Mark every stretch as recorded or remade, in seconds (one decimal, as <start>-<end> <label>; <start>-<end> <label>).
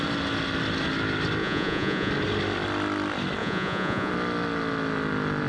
0.0-1.4 recorded; 1.4-2.1 remade; 2.1-3.4 recorded; 3.4-4.1 remade; 4.1-5.5 recorded